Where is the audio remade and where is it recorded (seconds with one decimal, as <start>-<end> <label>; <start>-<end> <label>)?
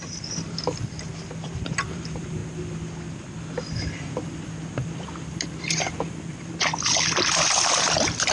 0.0-2.4 remade; 2.4-4.8 recorded; 4.8-8.3 remade